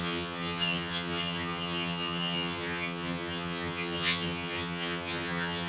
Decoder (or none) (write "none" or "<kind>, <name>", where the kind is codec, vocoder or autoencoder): vocoder, HiFi-GAN